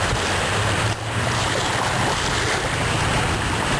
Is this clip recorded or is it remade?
recorded